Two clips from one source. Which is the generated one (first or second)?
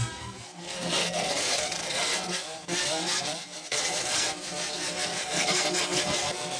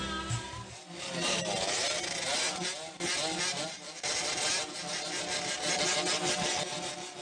first